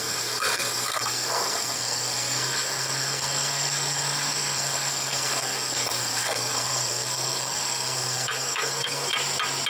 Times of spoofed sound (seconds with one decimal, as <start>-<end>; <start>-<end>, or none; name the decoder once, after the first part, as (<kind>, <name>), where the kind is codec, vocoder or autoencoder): 0.0-9.1 (codec, SNAC)

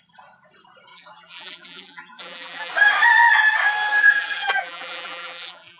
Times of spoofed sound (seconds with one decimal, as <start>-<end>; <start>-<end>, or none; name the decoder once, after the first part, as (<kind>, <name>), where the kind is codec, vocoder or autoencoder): 0.9-2.7 (vocoder, BigVGAN v2); 4.0-5.8